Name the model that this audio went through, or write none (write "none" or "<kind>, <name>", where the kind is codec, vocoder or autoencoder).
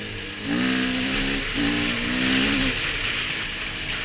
none